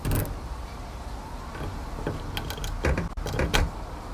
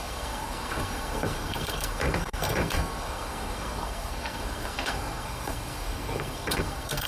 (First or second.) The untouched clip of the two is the first